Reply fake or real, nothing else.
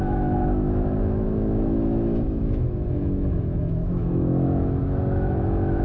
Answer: fake